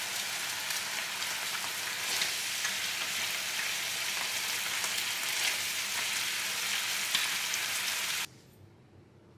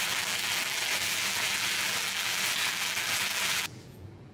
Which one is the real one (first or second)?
first